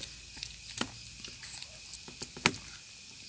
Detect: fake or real real